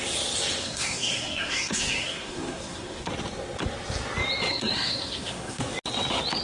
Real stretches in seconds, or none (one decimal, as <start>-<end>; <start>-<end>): 0.0-0.6; 3.1-4.5; 5.6-6.4